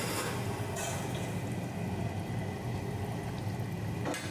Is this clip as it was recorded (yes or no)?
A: yes